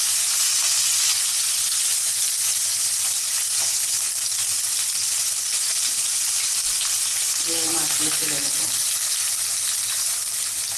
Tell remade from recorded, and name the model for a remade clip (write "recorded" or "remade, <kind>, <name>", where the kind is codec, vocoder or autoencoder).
recorded